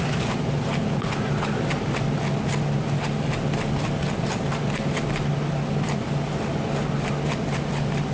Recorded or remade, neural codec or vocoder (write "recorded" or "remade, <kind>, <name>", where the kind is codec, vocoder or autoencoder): recorded